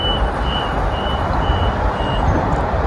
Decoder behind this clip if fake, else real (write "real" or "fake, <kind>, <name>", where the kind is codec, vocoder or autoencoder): fake, vocoder, BigVGAN v2